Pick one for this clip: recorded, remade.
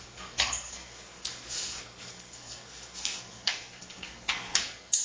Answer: remade